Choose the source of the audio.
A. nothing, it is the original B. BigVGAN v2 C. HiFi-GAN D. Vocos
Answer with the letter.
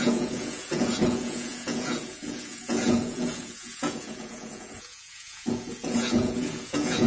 D